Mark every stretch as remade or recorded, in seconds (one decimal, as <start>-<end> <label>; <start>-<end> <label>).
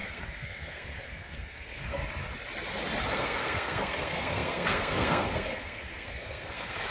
0.0-2.0 remade; 2.0-3.1 recorded; 3.1-6.9 remade